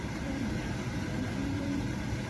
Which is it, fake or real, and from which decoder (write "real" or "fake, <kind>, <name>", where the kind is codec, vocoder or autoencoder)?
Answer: fake, vocoder, BigVGAN v2